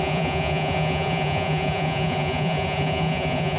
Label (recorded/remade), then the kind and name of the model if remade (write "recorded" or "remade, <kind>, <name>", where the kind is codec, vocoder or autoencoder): remade, vocoder, Vocos